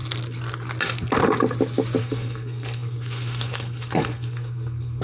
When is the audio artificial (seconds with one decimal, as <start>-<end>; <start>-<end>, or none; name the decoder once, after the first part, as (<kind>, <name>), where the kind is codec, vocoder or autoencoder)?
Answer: 2.0-5.0 (codec, SNAC)